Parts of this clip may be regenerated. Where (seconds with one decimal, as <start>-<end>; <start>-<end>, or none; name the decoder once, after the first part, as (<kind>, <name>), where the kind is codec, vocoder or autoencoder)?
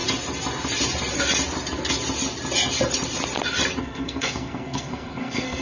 3.8-5.6 (codec, SNAC)